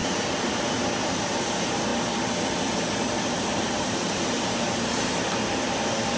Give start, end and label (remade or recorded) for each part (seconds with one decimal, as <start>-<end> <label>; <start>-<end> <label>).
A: 0.0-1.9 remade; 1.9-3.3 recorded; 3.3-6.2 remade